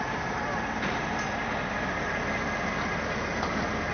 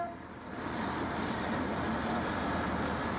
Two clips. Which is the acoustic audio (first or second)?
first